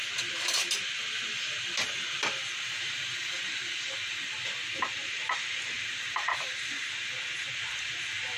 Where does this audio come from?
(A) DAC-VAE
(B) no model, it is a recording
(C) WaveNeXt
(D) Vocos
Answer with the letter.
B